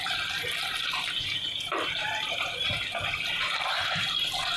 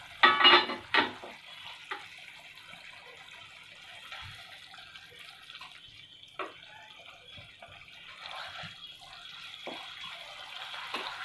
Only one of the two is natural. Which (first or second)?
second